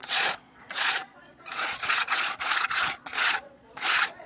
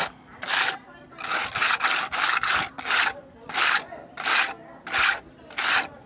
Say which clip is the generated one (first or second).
first